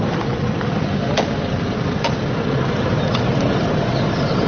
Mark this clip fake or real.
real